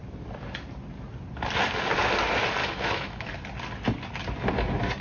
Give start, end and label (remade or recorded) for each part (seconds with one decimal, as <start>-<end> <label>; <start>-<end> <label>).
0.0-2.6 recorded; 2.6-3.3 remade; 3.3-5.0 recorded